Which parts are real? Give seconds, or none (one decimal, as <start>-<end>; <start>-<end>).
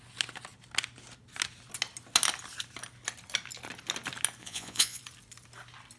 0.0-4.4; 5.0-6.0